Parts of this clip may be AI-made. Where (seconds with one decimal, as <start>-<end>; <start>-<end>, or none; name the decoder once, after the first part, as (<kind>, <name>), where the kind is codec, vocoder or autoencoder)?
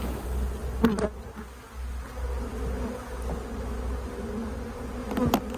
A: none